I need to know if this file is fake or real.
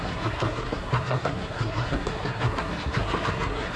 fake